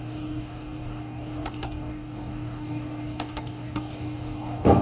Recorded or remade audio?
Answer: remade